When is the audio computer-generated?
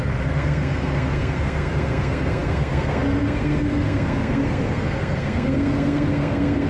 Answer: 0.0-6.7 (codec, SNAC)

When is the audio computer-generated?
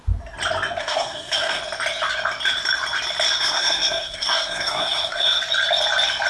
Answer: 0.8-1.6 (codec, SNAC); 3.4-5.4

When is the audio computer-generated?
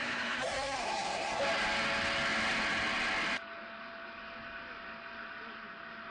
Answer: 0.0-1.4 (codec, SNAC)